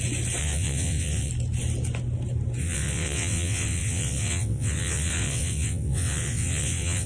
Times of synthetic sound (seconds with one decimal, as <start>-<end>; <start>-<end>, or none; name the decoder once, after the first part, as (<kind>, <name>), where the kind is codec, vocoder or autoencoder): 0.4-1.3 (vocoder, WaveNeXt); 2.6-7.1